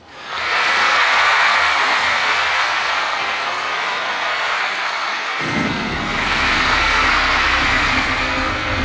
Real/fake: fake